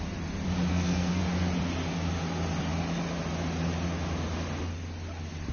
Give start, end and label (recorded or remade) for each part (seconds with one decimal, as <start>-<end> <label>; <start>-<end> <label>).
0.0-0.7 recorded; 0.7-1.2 remade; 1.2-5.5 recorded